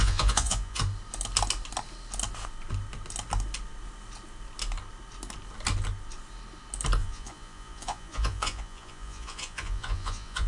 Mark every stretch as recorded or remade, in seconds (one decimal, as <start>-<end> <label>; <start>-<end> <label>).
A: 0.0-0.8 remade; 0.8-7.0 recorded; 7.0-10.5 remade